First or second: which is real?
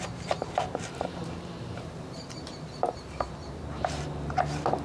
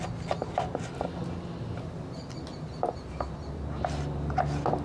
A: second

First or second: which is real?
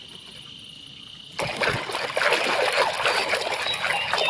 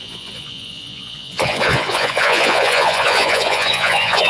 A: first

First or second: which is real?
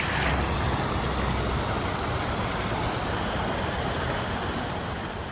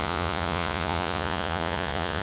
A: first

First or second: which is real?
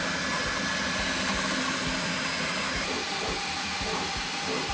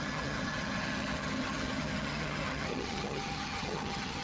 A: first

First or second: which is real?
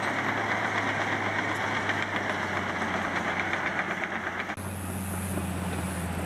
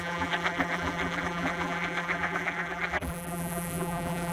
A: first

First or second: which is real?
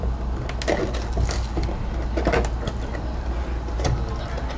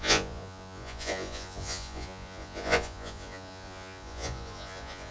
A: first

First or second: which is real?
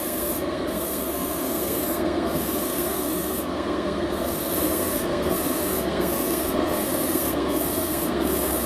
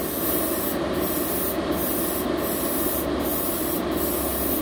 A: second